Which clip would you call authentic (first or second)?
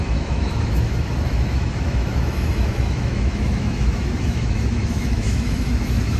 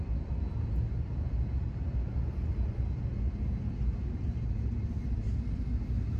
second